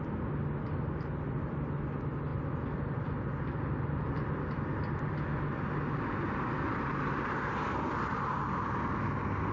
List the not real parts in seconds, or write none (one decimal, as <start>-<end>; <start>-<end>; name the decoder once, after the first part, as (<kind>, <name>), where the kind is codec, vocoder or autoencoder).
none